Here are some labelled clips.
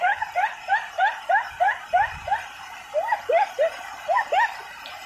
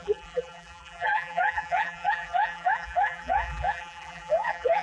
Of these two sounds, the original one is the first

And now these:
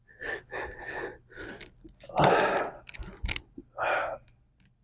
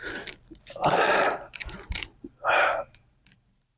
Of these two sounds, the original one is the first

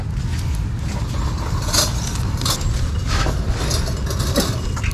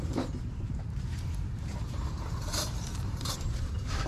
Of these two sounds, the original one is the first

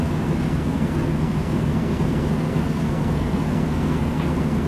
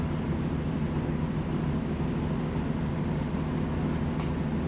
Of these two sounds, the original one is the second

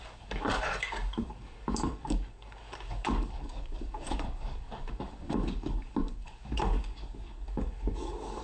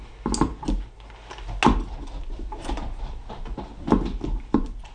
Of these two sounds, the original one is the second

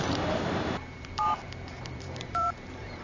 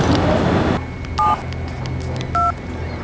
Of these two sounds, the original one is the second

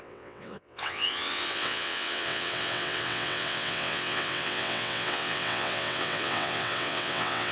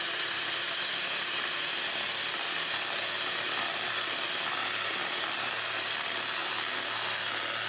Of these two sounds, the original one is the second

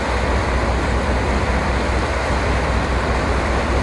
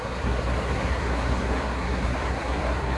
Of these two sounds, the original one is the first